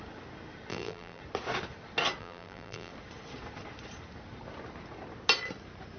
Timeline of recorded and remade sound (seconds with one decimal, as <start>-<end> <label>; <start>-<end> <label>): 0.0-0.7 recorded; 0.7-1.2 remade; 1.2-2.2 recorded; 2.2-2.9 remade; 2.9-6.0 recorded